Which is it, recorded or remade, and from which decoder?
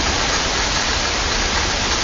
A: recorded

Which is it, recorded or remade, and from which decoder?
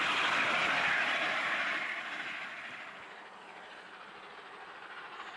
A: recorded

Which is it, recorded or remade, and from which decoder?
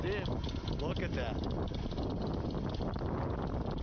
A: recorded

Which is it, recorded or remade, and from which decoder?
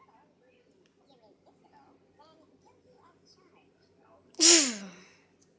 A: recorded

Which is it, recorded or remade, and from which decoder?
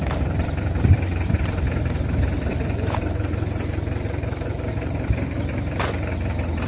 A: remade, vocoder, BigVGAN v2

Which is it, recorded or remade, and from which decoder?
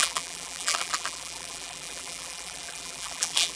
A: remade, vocoder, BigVGAN v2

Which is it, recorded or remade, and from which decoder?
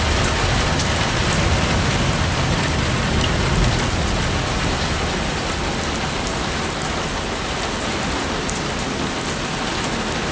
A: recorded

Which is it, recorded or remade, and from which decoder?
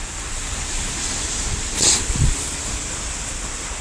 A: recorded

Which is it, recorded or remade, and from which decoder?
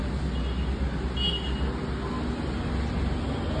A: recorded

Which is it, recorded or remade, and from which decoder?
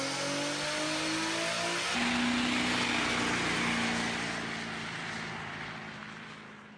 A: recorded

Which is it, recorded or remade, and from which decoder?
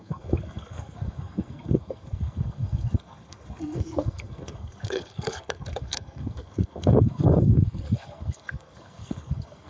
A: remade, codec, SNAC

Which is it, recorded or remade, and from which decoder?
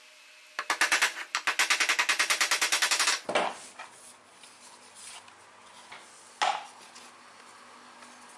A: recorded